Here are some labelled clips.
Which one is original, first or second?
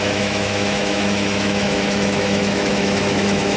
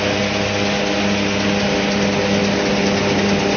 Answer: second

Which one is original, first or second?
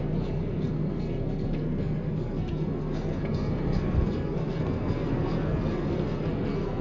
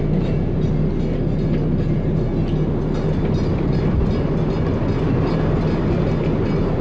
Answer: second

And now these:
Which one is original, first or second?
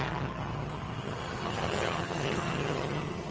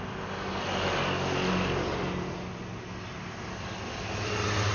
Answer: second